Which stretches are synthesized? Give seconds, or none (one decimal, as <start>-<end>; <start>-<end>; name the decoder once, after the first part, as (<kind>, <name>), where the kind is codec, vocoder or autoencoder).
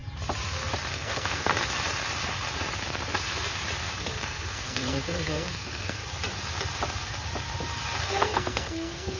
0.9-1.5 (codec, SNAC); 4.0-6.0; 8.0-9.2